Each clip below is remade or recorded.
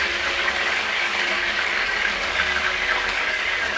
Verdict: remade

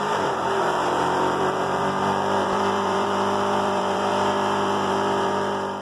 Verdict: remade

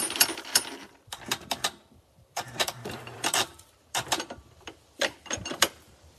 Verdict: remade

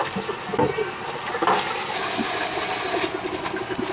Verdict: recorded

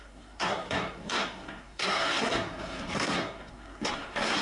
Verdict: remade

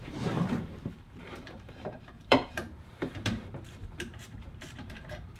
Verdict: remade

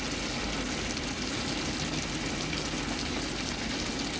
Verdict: recorded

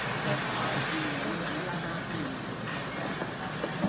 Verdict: recorded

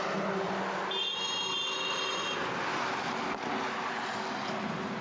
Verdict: recorded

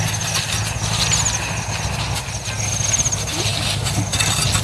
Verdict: recorded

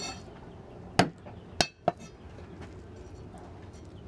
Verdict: recorded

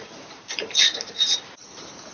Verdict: remade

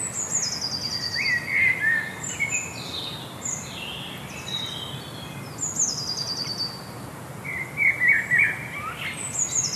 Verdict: recorded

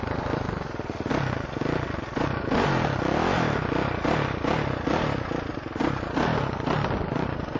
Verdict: recorded